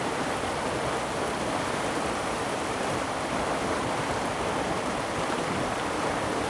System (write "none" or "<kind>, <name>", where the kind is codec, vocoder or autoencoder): vocoder, BigVGAN v2